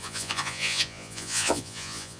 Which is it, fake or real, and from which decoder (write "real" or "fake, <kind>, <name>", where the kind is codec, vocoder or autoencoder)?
fake, vocoder, Vocos